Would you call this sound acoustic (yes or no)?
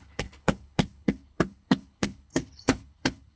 no